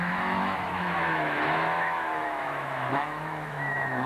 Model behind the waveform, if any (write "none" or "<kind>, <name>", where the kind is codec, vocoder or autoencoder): autoencoder, DAC-VAE